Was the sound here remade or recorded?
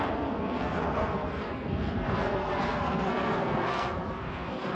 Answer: remade